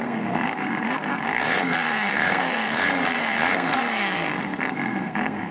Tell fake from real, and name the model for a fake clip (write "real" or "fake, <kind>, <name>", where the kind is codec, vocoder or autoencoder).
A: fake, codec, SNAC